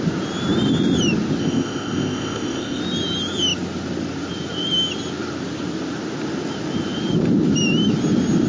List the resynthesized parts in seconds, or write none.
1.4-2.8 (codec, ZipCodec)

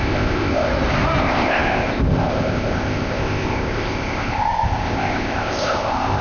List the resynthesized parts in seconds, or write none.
0.0-0.7 (codec, ZipCodec); 1.2-6.2

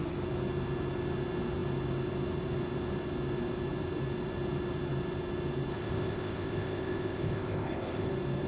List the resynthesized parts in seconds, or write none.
5.7-8.1 (codec, ZipCodec)

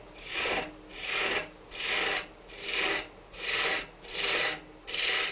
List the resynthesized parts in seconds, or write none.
none

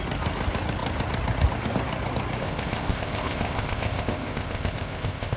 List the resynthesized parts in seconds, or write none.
2.4-5.4 (codec, ZipCodec)

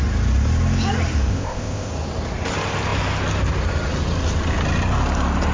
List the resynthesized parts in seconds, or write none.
1.3-1.9 (codec, ZipCodec)